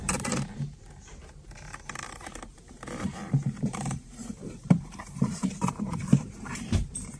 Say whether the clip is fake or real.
fake